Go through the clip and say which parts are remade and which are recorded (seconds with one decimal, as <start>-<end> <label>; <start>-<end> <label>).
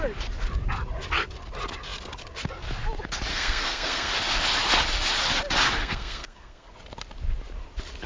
0.0-3.3 recorded; 3.3-4.1 remade; 4.1-5.8 recorded; 5.8-6.7 remade; 6.7-8.1 recorded